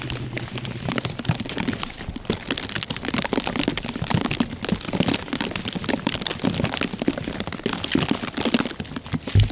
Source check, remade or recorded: recorded